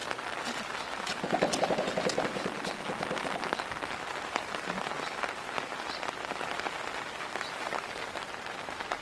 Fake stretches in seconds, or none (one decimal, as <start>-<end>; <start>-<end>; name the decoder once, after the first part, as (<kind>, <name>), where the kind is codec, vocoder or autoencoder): none